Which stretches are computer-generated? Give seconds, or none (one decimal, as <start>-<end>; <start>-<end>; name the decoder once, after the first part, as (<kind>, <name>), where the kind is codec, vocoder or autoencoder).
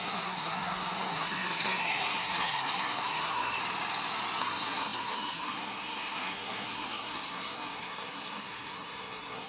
0.0-3.6 (codec, SNAC); 4.4-9.5